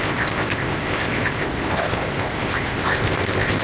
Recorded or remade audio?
remade